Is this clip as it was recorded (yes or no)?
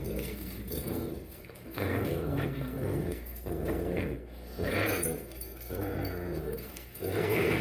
no